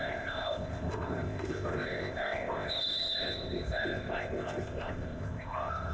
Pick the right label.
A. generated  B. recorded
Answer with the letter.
A